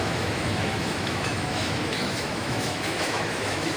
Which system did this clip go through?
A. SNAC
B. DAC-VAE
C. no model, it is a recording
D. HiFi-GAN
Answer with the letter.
B